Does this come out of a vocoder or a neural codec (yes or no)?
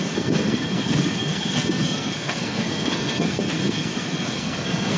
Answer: yes